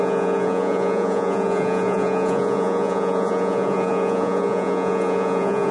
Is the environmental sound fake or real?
fake